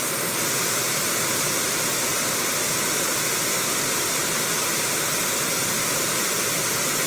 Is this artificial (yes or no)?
no